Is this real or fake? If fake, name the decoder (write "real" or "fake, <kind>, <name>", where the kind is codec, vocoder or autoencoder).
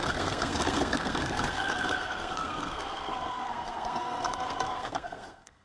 fake, codec, SNAC